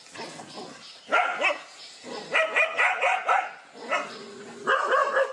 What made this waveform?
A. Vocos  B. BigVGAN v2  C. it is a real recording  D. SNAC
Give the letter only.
C